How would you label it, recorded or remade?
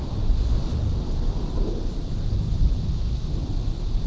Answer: recorded